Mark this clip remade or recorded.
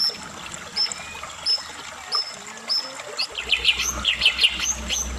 recorded